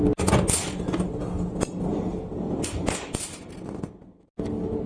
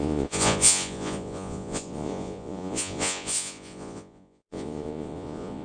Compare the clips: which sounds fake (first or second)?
second